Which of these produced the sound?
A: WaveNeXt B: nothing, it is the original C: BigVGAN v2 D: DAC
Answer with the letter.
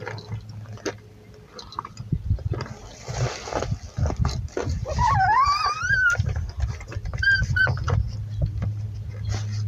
C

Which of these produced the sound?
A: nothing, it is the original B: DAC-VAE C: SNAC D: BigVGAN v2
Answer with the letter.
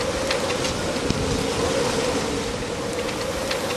A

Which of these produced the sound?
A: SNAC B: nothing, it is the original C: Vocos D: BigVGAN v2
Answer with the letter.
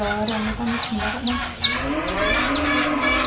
B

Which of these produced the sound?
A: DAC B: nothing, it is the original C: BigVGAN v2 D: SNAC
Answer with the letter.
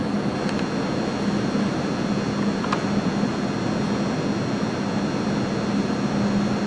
B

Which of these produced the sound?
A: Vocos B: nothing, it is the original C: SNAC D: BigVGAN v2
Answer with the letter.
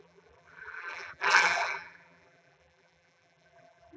D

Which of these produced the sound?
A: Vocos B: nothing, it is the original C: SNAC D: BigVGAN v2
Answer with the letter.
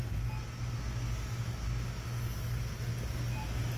B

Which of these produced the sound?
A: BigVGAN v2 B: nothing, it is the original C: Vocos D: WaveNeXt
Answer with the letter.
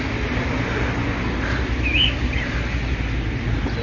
B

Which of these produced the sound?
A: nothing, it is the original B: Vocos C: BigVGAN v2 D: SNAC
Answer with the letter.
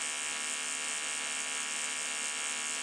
A